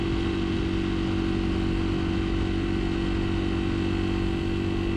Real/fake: real